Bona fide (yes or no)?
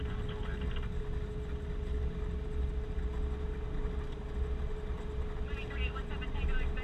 yes